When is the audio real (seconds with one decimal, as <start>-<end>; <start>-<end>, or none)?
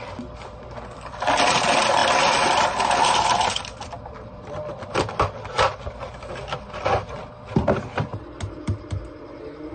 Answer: 0.0-9.7